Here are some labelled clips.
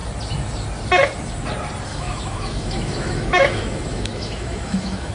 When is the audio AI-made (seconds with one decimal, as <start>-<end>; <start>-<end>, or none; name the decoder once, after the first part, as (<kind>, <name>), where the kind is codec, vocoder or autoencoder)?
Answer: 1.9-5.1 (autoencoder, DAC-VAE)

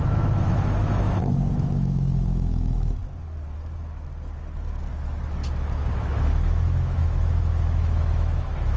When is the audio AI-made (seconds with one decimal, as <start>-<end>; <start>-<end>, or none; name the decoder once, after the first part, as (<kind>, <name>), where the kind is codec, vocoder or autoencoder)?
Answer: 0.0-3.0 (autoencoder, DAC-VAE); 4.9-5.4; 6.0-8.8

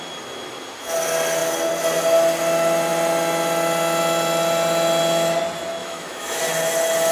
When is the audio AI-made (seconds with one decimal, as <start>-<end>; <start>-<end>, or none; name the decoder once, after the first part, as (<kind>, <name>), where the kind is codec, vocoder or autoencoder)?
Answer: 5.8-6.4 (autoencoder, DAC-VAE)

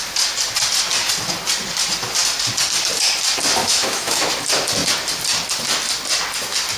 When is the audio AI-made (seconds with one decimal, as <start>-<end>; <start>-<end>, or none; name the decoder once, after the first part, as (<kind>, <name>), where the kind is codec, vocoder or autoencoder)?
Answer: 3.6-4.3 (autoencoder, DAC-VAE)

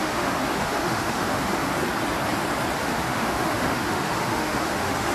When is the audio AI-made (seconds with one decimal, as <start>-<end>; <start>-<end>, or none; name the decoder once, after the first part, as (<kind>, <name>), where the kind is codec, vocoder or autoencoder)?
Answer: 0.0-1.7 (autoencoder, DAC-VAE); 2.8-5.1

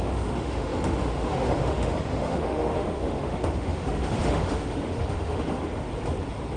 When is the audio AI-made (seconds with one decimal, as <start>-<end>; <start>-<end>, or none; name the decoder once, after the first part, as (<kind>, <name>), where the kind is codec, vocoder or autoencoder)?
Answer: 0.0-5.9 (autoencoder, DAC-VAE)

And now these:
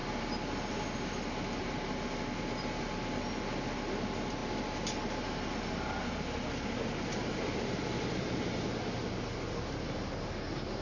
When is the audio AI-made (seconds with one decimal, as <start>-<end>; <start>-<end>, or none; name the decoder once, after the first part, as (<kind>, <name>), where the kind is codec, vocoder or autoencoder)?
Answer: none